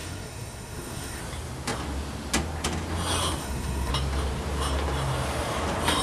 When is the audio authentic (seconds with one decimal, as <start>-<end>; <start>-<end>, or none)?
1.2-3.4; 3.9-6.0